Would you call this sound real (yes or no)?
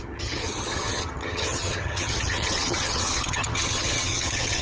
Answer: no